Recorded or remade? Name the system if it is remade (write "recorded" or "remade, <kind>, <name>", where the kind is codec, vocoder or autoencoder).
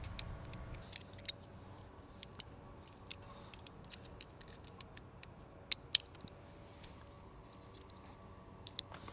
recorded